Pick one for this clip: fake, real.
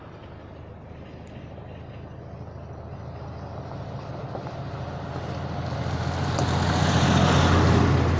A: real